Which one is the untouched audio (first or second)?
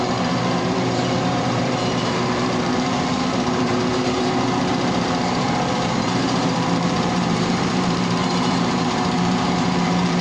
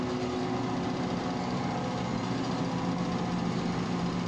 second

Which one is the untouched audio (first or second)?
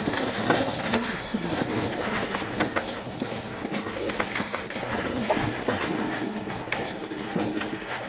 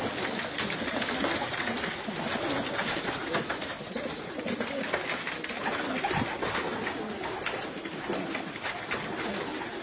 second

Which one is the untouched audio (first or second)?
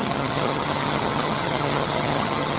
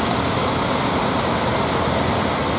second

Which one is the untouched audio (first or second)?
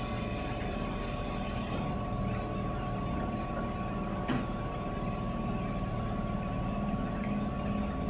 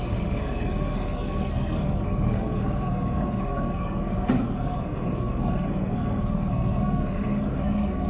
first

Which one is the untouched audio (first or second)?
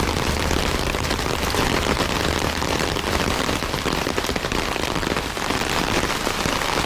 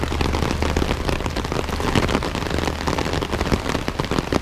second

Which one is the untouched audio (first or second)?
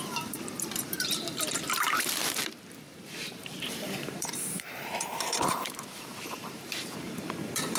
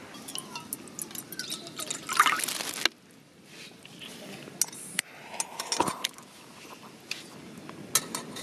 second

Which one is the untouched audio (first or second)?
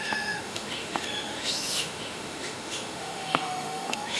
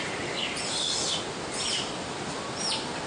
second